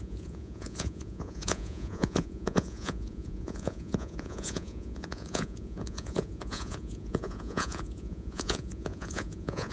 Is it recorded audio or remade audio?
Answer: remade